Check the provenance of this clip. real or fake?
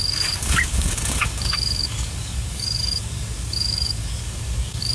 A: fake